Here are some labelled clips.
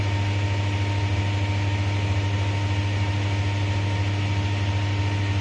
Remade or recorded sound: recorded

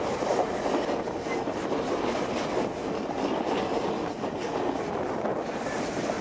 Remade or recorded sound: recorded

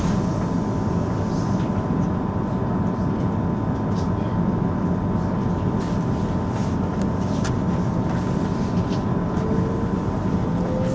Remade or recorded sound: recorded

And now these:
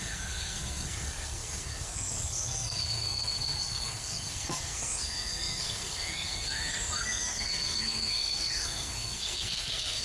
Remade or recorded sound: remade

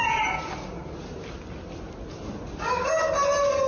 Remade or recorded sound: recorded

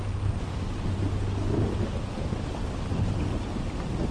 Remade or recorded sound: recorded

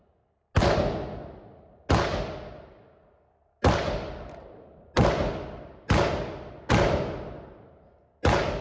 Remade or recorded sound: recorded